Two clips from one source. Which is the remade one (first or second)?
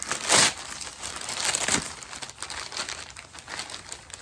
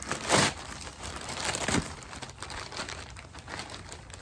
second